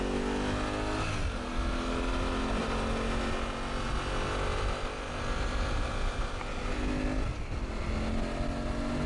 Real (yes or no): yes